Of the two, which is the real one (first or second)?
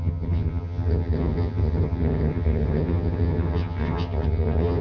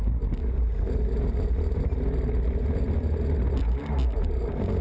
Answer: second